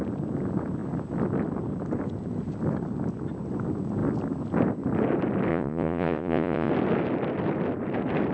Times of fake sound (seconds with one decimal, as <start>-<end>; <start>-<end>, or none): 5.5-6.7